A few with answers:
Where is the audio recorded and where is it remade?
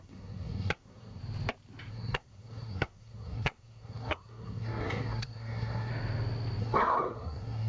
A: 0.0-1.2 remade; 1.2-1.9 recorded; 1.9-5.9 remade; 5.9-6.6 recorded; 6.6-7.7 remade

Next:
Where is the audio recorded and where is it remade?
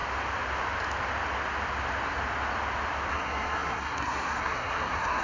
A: 0.0-3.1 recorded; 3.1-5.2 remade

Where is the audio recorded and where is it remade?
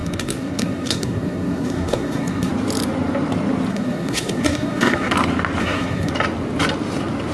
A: 0.0-2.5 remade; 2.5-3.7 recorded; 3.7-5.1 remade; 5.1-5.6 recorded; 5.6-6.1 remade; 6.1-7.3 recorded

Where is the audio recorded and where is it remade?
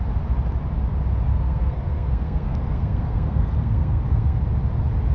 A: 0.0-1.3 recorded; 1.3-4.4 remade; 4.4-5.1 recorded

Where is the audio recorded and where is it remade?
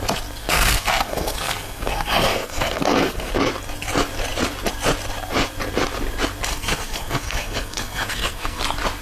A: 0.0-0.4 recorded; 0.4-3.3 remade; 3.3-6.5 recorded; 6.5-8.6 remade; 8.6-9.0 recorded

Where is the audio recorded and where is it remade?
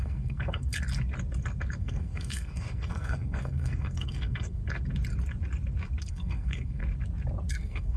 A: 0.0-0.7 remade; 0.7-1.8 recorded; 1.8-4.6 remade; 4.6-6.1 recorded; 6.1-6.8 remade; 6.8-7.5 recorded; 7.5-8.0 remade